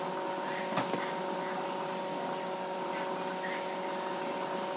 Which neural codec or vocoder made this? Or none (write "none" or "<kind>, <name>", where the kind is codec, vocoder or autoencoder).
none